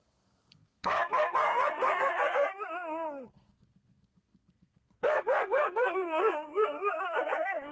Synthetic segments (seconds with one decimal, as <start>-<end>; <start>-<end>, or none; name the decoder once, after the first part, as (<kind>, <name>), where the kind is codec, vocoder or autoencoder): 0.0-7.7 (codec, SNAC)